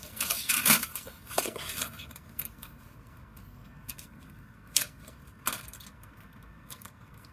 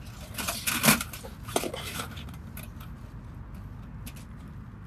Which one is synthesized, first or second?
first